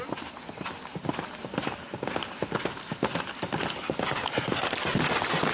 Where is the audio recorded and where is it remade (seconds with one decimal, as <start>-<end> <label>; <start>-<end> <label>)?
0.0-5.5 recorded